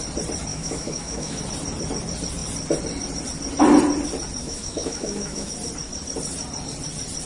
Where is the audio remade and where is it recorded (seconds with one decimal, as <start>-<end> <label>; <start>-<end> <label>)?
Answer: 0.0-0.5 recorded; 0.5-1.4 remade; 1.4-4.4 recorded; 4.4-5.5 remade; 5.5-7.3 recorded

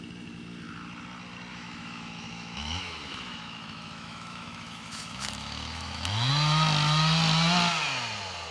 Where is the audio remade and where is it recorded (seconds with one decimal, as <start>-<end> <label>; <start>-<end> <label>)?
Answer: 0.0-1.5 recorded; 1.5-6.3 remade; 6.3-8.5 recorded

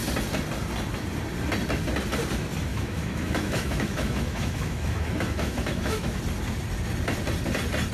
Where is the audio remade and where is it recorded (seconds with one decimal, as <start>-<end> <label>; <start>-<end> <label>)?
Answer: 0.0-2.7 recorded; 2.7-6.2 remade; 6.2-7.9 recorded

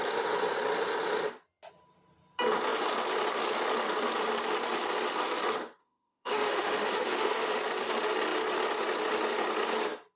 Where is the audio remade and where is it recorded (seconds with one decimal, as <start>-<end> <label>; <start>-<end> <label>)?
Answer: 0.0-5.8 recorded; 5.8-7.5 remade; 7.5-10.2 recorded